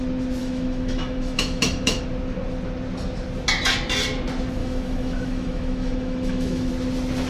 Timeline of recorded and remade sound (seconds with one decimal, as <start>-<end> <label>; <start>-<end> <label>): 0.0-0.4 recorded; 0.4-2.0 remade; 2.0-4.6 recorded; 4.6-6.7 remade; 6.7-7.3 recorded